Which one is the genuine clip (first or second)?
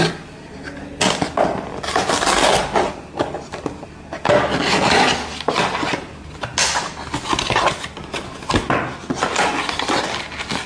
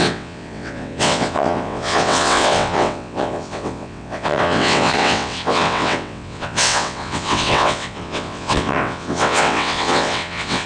first